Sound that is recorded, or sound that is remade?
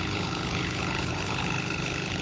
remade